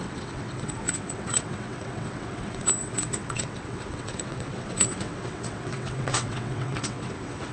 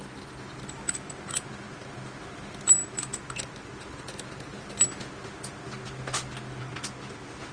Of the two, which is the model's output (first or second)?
first